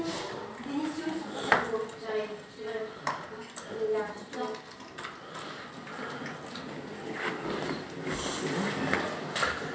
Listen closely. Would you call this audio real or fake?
real